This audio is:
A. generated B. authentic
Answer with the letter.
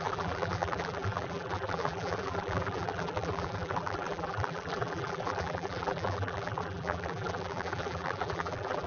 A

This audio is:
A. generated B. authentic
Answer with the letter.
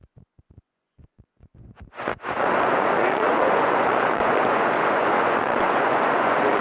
A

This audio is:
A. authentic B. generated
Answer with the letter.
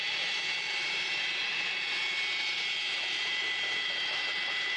B